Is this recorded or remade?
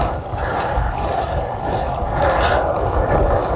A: recorded